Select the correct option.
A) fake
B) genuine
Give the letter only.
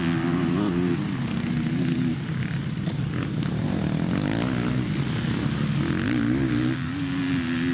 B